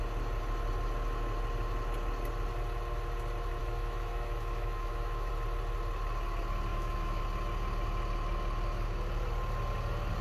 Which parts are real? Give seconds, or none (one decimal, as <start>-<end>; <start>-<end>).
0.0-3.6; 5.3-6.7; 7.2-10.2